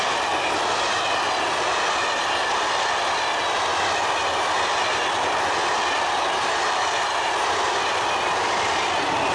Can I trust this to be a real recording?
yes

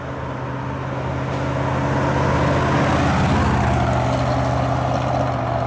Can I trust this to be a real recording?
yes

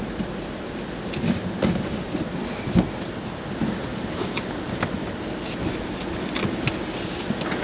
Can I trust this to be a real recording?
yes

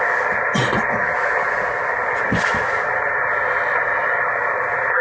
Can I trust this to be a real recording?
yes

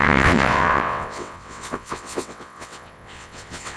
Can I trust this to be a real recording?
no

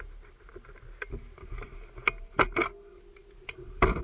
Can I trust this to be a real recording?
yes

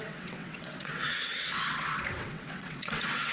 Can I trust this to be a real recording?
no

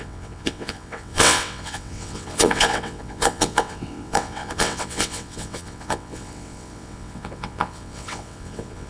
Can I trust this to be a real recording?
no